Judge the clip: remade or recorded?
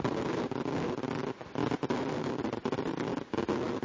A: recorded